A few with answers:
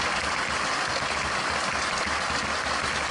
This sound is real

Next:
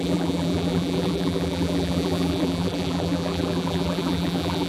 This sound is fake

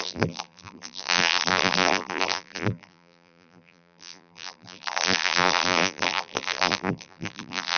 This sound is fake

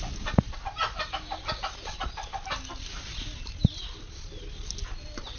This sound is real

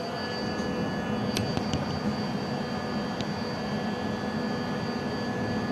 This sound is real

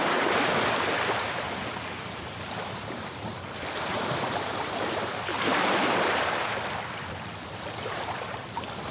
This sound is fake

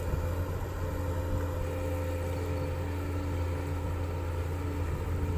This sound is real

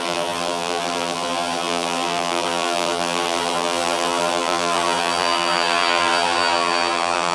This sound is fake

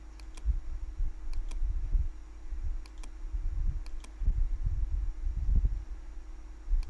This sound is real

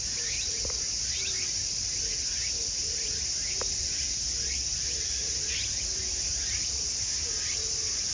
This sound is real